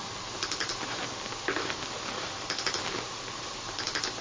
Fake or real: real